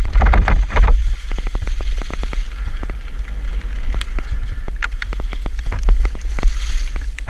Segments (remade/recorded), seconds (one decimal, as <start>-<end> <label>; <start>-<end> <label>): 0.0-7.3 recorded